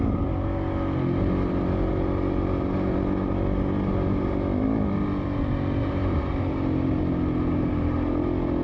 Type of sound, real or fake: real